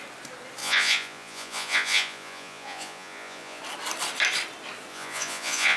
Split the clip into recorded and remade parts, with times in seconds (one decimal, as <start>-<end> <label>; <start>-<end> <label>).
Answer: 0.0-0.6 recorded; 0.6-3.6 remade; 3.6-4.9 recorded; 4.9-5.8 remade